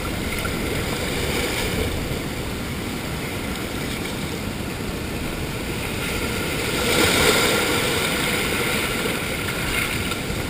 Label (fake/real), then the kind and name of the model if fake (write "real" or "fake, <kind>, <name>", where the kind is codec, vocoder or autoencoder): fake, vocoder, BigVGAN v2